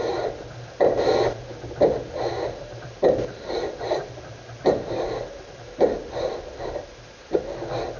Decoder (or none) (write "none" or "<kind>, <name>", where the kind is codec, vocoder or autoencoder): none